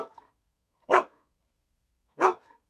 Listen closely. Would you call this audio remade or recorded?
remade